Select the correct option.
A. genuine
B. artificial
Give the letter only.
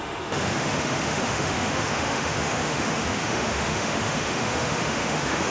B